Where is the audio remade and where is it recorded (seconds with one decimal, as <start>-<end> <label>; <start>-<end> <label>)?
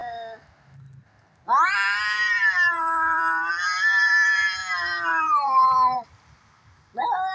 0.0-7.3 remade